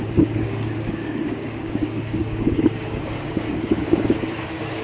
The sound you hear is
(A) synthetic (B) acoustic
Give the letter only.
A